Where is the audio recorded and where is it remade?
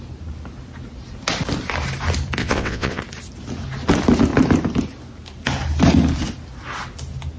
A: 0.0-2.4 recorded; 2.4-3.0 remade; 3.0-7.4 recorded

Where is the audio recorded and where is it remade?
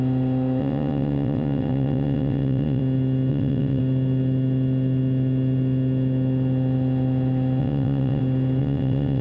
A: 0.0-0.6 recorded; 0.6-2.8 remade; 2.8-3.3 recorded; 3.3-3.8 remade; 3.8-7.6 recorded; 7.6-8.2 remade; 8.2-8.6 recorded; 8.6-9.2 remade